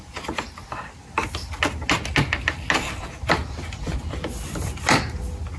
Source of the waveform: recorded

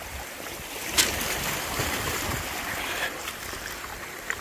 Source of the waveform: recorded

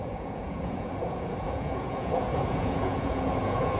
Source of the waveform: remade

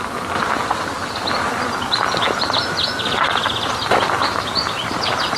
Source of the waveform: recorded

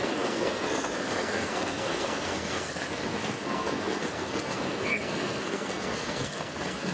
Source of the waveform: remade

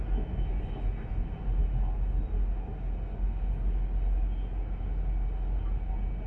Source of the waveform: recorded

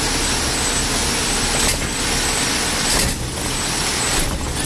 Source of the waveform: recorded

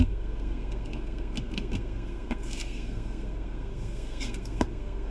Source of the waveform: remade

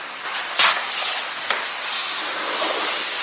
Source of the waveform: recorded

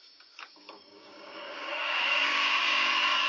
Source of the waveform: remade